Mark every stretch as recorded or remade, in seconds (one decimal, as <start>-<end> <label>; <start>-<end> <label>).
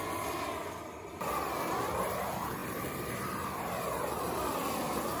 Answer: 0.0-5.2 recorded